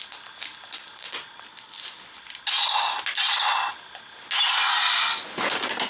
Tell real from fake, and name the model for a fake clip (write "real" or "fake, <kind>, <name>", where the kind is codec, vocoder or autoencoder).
real